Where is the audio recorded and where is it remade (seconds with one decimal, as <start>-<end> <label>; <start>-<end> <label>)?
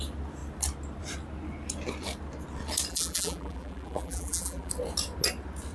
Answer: 0.0-2.9 recorded; 2.9-4.7 remade; 4.7-5.7 recorded